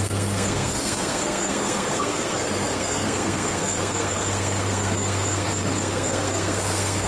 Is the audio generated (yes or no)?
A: yes